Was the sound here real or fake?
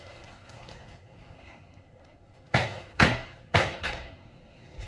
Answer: fake